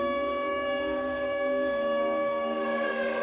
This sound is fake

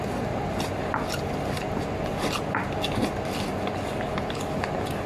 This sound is real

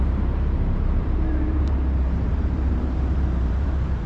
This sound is fake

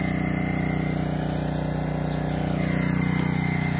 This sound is real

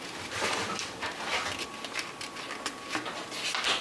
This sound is real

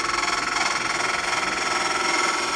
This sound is real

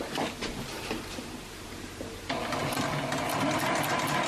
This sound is real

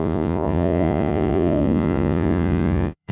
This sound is fake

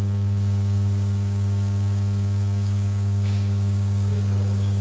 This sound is fake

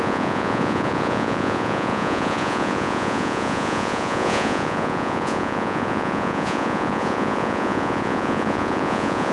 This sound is fake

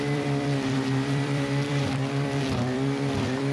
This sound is fake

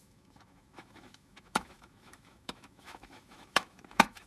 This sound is fake